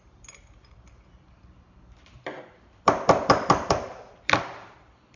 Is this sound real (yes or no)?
no